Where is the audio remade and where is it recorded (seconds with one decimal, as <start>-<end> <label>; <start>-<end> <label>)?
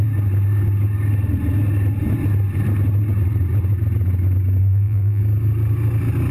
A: 0.0-4.6 recorded; 4.6-5.2 remade; 5.2-6.3 recorded